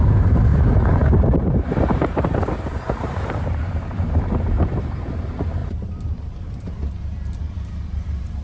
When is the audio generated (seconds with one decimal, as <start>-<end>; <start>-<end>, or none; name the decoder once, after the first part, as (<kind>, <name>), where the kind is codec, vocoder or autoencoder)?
0.0-0.5 (vocoder, BigVGAN v2); 1.2-8.4